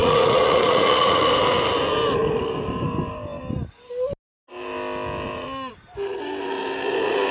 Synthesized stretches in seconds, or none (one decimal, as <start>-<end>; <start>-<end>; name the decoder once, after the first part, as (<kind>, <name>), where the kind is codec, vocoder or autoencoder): 0.0-1.3 (vocoder, Vocos)